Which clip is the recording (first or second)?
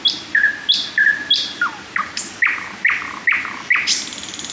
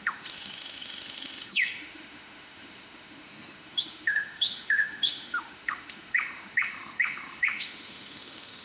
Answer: first